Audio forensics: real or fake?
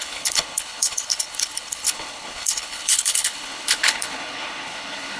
fake